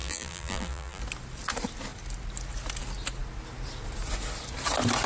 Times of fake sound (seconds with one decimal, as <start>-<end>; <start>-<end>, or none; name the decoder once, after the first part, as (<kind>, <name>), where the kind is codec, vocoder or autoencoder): 0.0-1.0 (vocoder, BigVGAN v2)

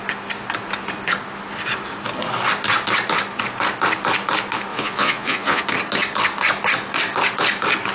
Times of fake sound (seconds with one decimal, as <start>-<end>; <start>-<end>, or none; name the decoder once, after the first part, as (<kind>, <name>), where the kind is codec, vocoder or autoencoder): 4.7-5.6 (vocoder, Vocos)

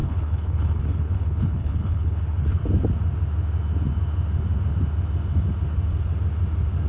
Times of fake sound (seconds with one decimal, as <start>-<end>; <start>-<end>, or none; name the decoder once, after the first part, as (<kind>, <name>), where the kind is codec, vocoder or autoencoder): 0.0-2.6 (codec, HILCodec)

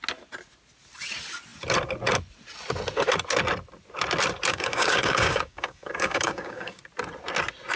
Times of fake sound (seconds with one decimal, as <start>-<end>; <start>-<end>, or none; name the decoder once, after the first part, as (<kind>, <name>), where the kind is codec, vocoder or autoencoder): 4.5-6.8 (codec, DAC)

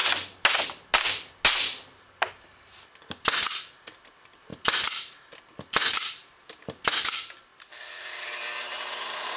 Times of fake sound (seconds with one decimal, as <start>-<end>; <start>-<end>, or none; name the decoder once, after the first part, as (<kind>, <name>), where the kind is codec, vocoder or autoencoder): 4.5-5.3 (vocoder, BigVGAN v2); 5.9-6.8; 7.5-9.4